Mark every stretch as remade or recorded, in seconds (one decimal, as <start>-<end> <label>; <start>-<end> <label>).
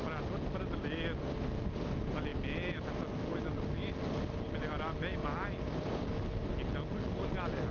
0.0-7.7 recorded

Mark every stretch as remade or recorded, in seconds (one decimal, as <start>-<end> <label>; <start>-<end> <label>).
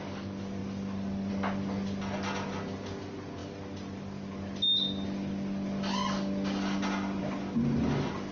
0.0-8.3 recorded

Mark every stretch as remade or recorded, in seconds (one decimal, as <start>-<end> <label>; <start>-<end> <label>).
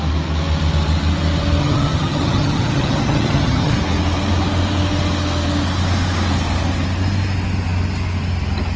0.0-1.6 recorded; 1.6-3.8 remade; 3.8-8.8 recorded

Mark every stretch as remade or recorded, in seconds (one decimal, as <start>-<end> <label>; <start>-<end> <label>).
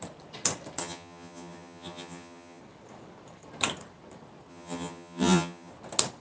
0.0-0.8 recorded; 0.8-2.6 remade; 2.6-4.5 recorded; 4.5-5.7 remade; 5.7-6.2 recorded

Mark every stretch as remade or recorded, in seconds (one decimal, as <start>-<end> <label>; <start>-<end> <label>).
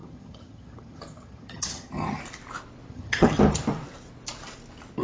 0.0-2.2 remade; 2.2-2.9 recorded; 2.9-3.4 remade; 3.4-5.0 recorded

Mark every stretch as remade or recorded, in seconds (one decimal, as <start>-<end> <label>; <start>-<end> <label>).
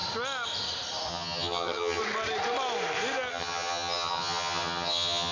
0.0-1.1 recorded; 1.1-2.0 remade; 2.0-3.3 recorded; 3.3-5.3 remade